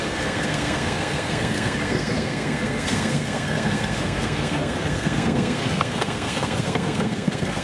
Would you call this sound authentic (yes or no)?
no